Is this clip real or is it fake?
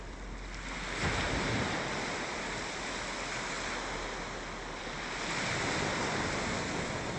real